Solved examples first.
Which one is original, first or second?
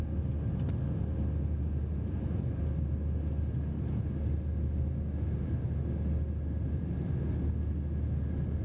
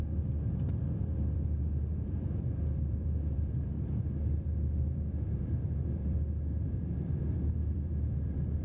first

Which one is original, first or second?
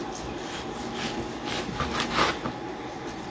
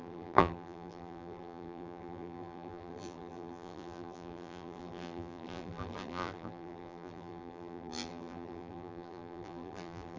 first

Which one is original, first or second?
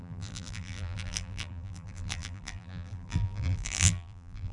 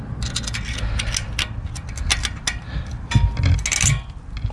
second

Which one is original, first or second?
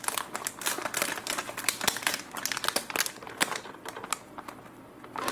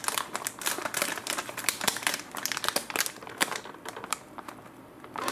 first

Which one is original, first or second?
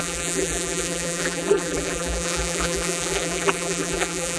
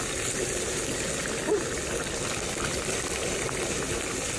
second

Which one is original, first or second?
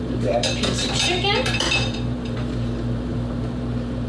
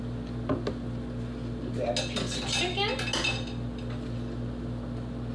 second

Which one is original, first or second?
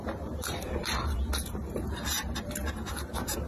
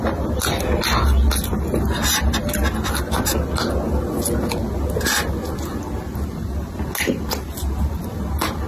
second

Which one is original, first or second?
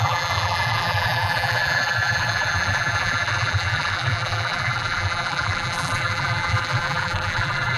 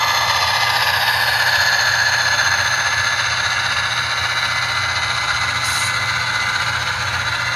second